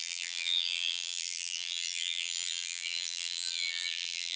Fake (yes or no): yes